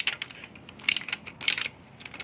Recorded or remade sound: recorded